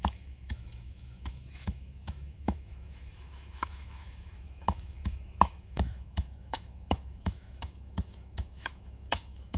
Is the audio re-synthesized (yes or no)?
yes